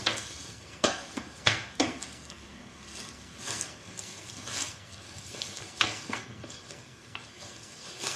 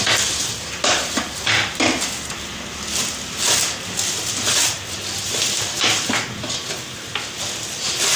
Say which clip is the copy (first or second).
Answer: first